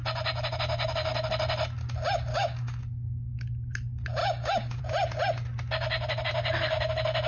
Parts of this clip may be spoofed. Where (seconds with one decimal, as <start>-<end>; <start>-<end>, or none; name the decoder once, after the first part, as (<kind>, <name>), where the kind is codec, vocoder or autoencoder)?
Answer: 2.3-2.8 (codec, DAC); 4.2-4.8